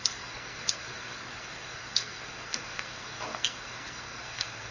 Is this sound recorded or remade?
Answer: remade